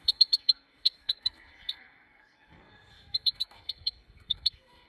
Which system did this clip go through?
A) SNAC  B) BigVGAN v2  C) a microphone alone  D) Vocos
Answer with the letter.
A